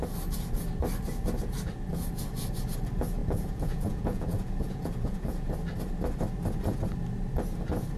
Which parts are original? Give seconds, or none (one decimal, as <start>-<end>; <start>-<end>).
0.0-3.2; 5.5-8.0